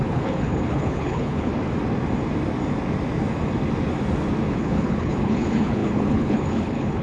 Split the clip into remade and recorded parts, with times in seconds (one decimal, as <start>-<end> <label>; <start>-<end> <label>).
0.0-1.5 remade; 1.5-4.5 recorded; 4.5-7.0 remade